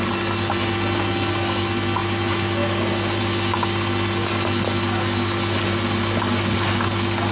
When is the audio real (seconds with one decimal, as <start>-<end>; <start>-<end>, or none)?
0.0-7.3